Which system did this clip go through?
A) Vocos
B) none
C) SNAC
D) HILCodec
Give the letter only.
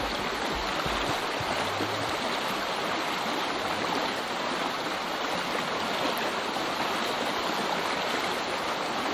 B